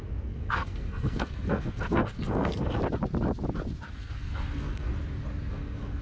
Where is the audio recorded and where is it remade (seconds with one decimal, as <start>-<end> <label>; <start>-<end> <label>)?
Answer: 0.0-2.8 remade; 2.8-3.9 recorded; 3.9-4.9 remade; 4.9-5.5 recorded; 5.5-6.0 remade

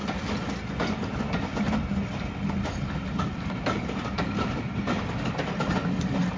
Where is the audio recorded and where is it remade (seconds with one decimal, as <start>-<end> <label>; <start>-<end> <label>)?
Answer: 0.0-6.4 recorded

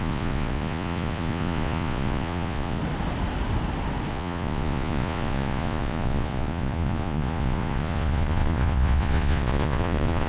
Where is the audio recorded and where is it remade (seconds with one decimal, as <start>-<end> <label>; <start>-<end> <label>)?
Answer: 0.0-2.8 remade; 2.8-4.1 recorded; 4.1-10.3 remade

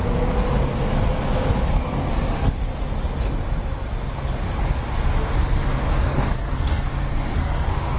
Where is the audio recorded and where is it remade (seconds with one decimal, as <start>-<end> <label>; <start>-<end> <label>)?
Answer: 0.0-1.7 recorded; 1.7-2.6 remade; 2.6-6.0 recorded; 6.0-8.0 remade

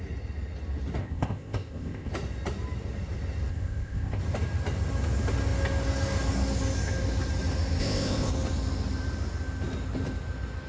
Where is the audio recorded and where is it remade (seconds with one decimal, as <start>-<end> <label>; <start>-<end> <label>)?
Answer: 0.0-1.0 recorded; 1.0-2.1 remade; 2.1-3.5 recorded; 3.5-4.2 remade; 4.2-7.8 recorded; 7.8-8.3 remade; 8.3-10.7 recorded

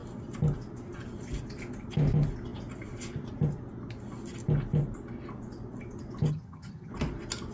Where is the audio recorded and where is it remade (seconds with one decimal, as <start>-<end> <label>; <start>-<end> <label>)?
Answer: 0.0-6.3 recorded; 6.3-6.9 remade; 6.9-7.5 recorded

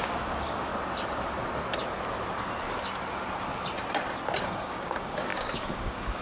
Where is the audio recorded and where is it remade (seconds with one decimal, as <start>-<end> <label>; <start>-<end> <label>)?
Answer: 0.0-0.7 remade; 0.7-4.4 recorded; 4.4-6.2 remade

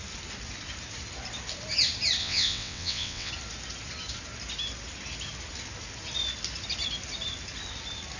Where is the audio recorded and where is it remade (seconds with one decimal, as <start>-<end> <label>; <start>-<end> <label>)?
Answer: 0.0-2.2 recorded; 2.2-3.3 remade; 3.3-8.2 recorded